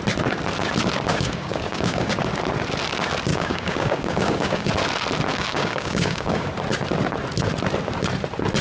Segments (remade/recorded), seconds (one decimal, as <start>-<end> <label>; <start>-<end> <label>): 0.0-1.1 recorded; 1.1-2.1 remade; 2.1-3.3 recorded; 3.3-4.7 remade; 4.7-5.3 recorded; 5.3-6.5 remade; 6.5-8.6 recorded